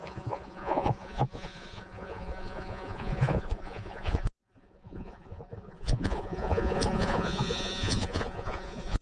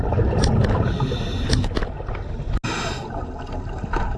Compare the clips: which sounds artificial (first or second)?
first